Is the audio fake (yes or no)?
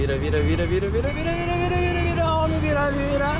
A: no